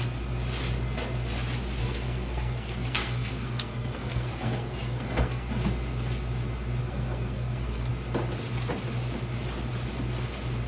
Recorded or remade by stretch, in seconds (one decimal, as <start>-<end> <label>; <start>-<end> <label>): 0.0-1.8 recorded; 1.8-5.5 remade; 5.5-6.8 recorded; 6.8-7.9 remade; 7.9-10.7 recorded